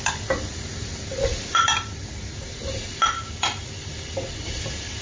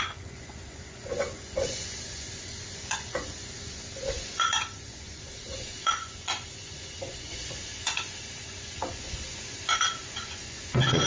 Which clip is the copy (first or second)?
second